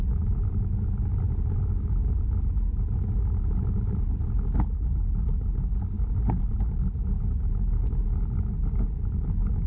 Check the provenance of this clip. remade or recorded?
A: recorded